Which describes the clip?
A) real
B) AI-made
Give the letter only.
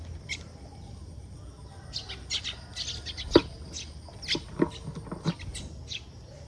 A